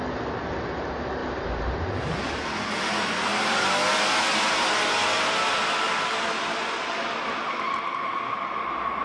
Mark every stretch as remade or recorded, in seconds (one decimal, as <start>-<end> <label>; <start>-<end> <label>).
0.0-1.2 recorded; 1.2-2.5 remade; 2.5-9.0 recorded